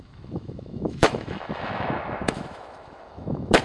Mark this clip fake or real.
fake